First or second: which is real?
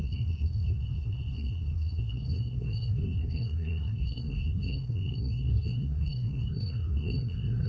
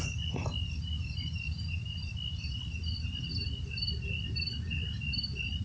second